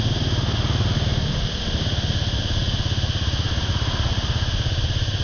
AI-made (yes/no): no